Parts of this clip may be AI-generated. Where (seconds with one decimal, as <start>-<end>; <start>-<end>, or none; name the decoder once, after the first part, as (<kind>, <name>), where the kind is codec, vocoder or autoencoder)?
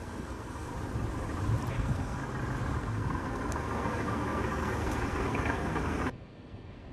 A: 0.0-0.7 (codec, SNAC); 1.7-2.2; 2.8-6.9